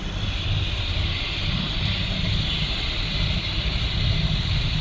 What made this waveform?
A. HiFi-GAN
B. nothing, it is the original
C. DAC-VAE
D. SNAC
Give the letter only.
B